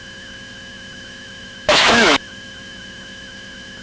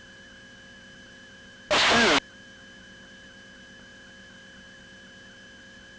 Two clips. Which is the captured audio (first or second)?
second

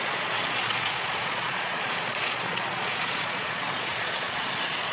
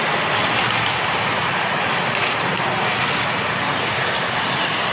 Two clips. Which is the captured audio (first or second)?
second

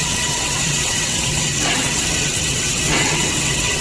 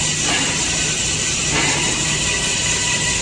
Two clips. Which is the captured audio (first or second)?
second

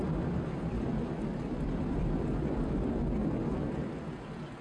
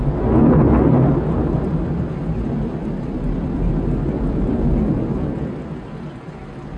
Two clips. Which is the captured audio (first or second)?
second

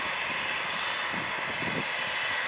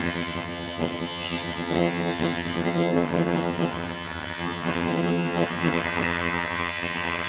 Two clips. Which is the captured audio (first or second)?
first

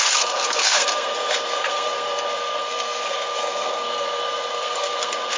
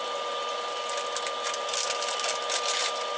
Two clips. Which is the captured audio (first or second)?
second